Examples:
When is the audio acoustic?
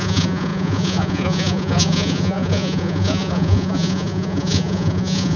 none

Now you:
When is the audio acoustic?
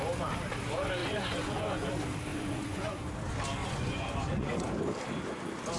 0.0-1.0; 1.9-2.3; 3.1-3.6; 4.6-5.8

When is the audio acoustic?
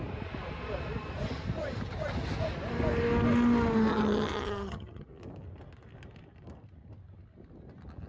0.0-3.9; 5.1-8.1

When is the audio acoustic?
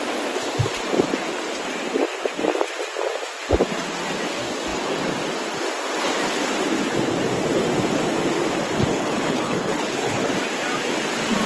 0.0-8.9; 10.3-11.5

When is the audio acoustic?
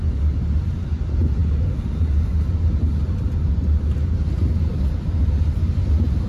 0.0-6.3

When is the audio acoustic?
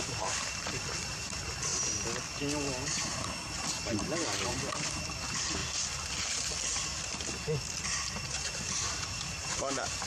0.0-4.2; 4.7-10.1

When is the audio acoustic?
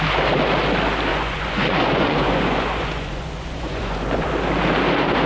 0.0-1.1; 4.3-5.3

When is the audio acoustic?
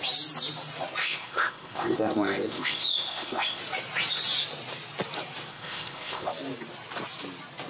0.0-1.0; 3.6-5.5; 6.3-7.7